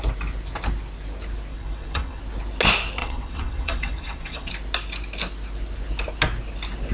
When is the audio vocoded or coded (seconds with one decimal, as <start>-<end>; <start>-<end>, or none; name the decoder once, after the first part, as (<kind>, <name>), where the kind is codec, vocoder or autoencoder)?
1.5-2.2 (vocoder, WaveNeXt); 3.0-4.5